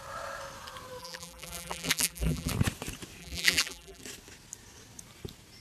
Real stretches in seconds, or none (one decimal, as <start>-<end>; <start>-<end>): 0.0-1.0; 2.5-3.2; 4.0-5.6

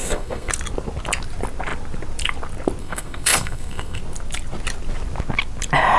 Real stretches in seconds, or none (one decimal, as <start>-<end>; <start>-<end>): 0.5-2.8; 4.0-6.0